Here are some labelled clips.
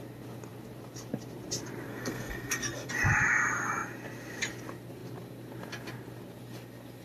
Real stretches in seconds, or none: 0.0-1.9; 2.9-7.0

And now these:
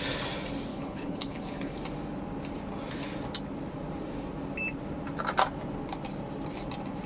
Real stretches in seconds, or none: 0.0-0.7; 1.8-7.1

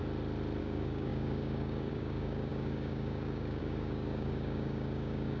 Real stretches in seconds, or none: 0.0-0.6

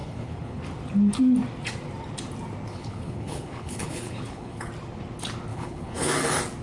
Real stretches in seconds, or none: 0.6-2.7; 4.7-5.5; 6.1-6.6

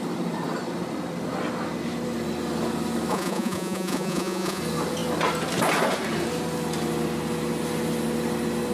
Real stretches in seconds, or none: 0.0-3.1; 4.6-8.7

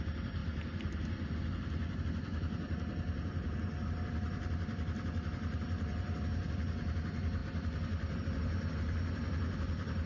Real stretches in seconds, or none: 0.0-10.1

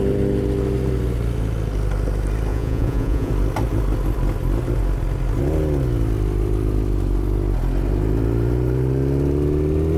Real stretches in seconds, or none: 0.0-2.5; 3.3-10.0

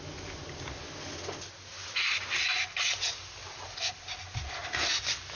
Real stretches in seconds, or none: 0.0-3.4; 4.5-5.4